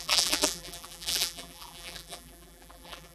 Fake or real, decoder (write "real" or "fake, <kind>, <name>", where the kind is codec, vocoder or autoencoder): fake, vocoder, BigVGAN v2